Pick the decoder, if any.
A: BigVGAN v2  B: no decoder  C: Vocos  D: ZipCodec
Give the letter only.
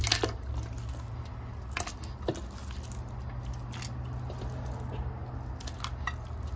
B